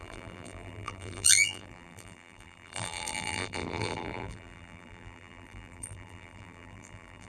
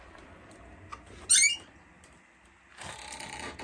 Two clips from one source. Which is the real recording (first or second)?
second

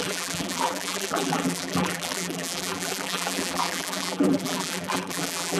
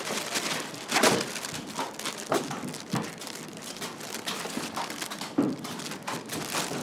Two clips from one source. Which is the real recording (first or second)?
second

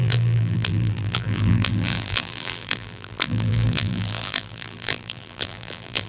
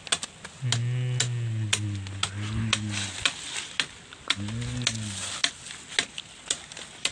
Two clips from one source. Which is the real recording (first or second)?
second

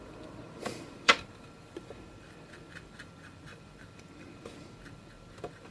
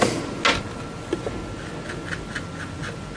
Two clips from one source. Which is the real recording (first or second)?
second